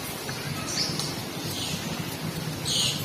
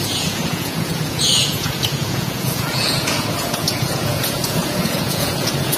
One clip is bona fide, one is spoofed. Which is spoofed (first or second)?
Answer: second